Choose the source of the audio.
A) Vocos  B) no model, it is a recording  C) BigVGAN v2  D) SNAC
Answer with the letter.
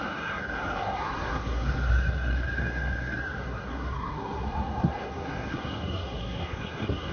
D